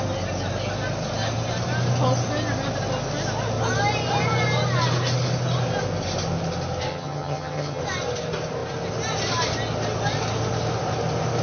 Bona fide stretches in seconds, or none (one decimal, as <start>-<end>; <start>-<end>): 0.0-6.9; 7.8-11.4